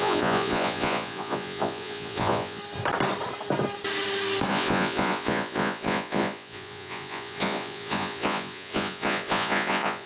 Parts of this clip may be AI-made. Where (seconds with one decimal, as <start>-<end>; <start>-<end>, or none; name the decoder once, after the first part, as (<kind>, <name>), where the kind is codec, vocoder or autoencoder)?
0.0-2.6 (vocoder, Vocos); 4.5-10.1